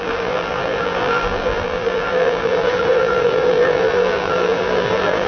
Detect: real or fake fake